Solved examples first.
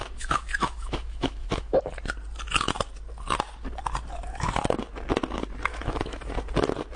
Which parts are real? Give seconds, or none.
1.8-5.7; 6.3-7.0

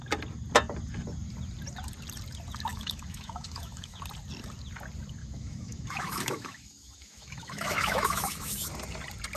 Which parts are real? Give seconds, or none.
0.0-2.7; 4.0-5.2; 8.7-9.4